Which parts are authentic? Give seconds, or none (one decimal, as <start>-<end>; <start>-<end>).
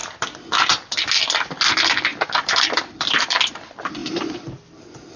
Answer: 0.0-2.1; 3.2-4.0